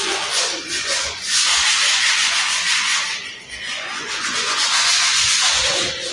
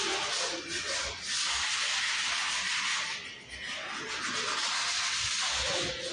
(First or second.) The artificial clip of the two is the first